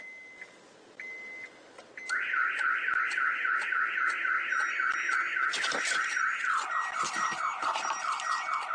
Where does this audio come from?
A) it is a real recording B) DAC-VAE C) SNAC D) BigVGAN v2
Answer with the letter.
A